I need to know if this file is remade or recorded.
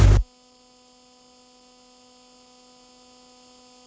recorded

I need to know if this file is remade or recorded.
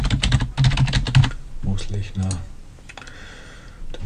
recorded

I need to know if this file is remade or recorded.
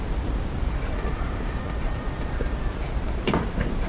remade